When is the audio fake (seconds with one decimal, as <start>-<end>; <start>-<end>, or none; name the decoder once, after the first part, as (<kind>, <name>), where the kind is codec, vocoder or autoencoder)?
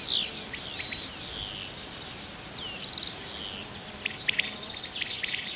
none